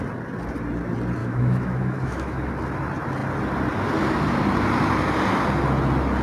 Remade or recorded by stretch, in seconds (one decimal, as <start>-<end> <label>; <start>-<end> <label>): 0.0-1.2 recorded; 1.2-2.5 remade; 2.5-6.2 recorded